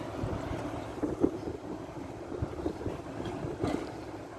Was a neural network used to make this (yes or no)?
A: no